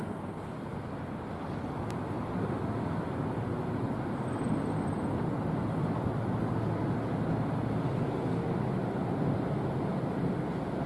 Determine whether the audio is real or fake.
real